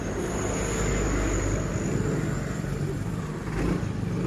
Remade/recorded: recorded